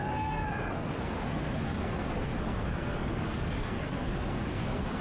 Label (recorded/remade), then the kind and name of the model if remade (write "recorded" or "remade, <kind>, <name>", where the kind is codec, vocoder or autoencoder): remade, codec, SNAC